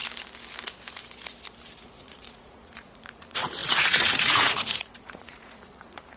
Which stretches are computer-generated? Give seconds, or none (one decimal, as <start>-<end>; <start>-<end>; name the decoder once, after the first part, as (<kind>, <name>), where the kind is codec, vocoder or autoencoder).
1.8-6.2 (vocoder, Vocos)